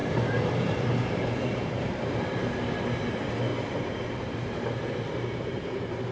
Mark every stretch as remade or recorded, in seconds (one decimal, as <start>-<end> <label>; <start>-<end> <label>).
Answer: 0.0-2.8 remade; 2.8-3.5 recorded; 3.5-6.1 remade